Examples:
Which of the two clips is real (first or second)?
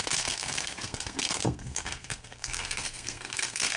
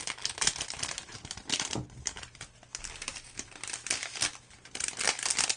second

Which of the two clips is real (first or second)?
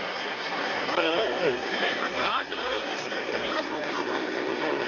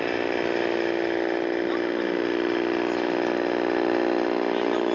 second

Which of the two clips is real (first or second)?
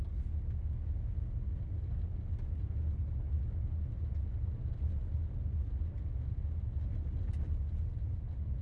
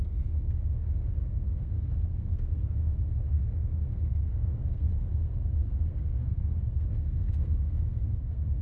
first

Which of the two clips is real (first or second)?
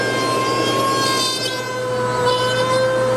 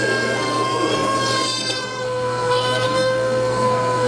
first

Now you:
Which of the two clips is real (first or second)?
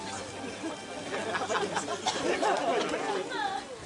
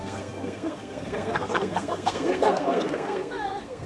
first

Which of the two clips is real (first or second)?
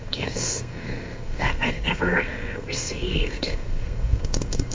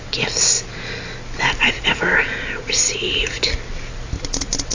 second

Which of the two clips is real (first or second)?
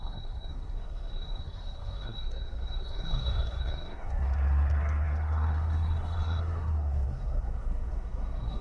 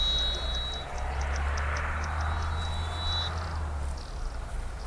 second